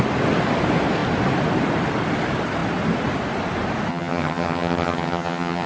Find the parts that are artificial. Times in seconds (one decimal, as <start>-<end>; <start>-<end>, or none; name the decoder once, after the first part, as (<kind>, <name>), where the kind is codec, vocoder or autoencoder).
3.9-5.7 (vocoder, HiFi-GAN)